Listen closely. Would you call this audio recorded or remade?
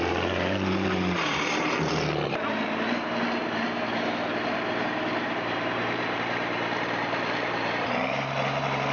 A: remade